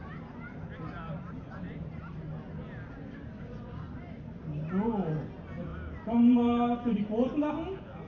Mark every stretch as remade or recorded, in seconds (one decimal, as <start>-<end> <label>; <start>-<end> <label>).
0.0-2.1 remade; 2.1-5.7 recorded; 5.7-7.5 remade; 7.5-8.1 recorded